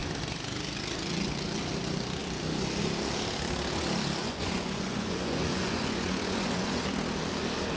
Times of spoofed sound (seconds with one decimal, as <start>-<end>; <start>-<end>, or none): 4.2-6.8

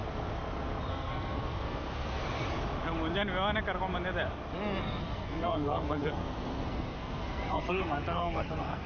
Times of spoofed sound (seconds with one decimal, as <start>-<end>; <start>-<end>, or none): 0.9-2.2; 4.8-8.9

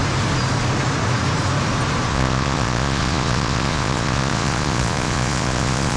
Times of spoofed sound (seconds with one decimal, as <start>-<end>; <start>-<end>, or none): 2.1-6.0

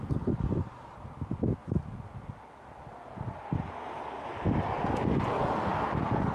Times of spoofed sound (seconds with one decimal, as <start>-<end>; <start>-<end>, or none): none

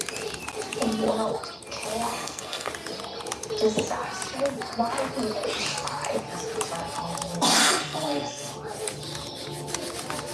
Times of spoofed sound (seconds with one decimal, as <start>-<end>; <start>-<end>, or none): 2.1-2.7; 7.6-8.5

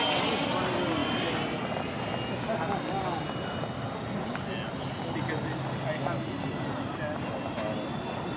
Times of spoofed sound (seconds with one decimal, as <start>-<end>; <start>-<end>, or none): none